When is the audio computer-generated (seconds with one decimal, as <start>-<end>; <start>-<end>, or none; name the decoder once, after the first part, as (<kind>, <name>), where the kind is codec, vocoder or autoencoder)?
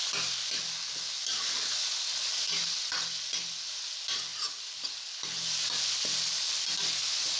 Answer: none